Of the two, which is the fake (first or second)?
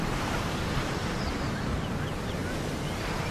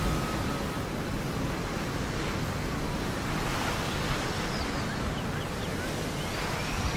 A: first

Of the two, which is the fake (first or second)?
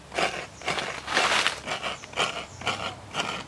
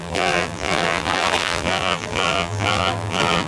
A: second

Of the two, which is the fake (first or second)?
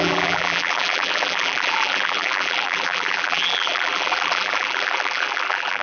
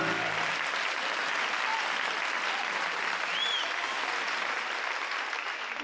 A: first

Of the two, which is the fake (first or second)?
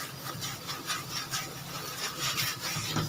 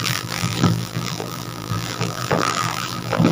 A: second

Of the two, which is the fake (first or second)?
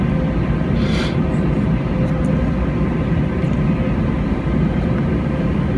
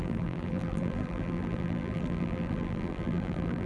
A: second